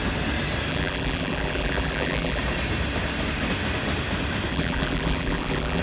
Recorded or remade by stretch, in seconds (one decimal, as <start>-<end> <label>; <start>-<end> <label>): 0.0-0.7 recorded; 0.7-2.4 remade; 2.4-4.5 recorded; 4.5-5.8 remade

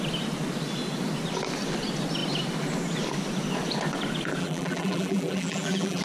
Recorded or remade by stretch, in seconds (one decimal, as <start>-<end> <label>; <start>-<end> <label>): 0.0-4.4 recorded; 4.4-6.0 remade

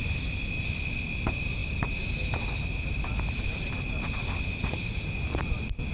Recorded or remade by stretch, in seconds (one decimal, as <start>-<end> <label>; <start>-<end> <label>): 0.0-5.9 recorded

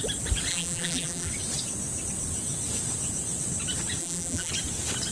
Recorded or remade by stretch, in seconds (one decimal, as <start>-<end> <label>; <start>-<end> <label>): 0.0-0.5 recorded; 0.5-1.3 remade; 1.3-4.0 recorded; 4.0-4.5 remade; 4.5-5.1 recorded

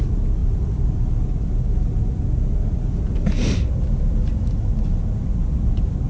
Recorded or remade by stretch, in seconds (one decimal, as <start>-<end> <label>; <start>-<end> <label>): 0.0-0.4 recorded; 0.4-1.1 remade; 1.1-6.1 recorded

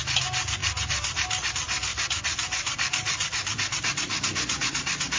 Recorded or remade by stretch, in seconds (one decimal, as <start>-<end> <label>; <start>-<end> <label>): 0.0-1.9 recorded; 1.9-5.2 remade